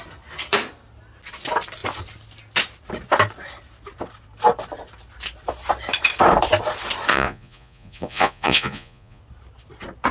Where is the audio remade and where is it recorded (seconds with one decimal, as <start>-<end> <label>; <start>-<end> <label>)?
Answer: 0.0-7.1 recorded; 7.1-9.2 remade; 9.2-10.1 recorded